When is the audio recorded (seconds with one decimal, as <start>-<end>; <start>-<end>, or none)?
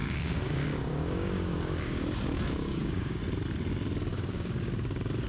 3.2-4.1; 4.7-5.3